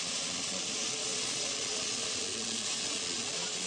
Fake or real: fake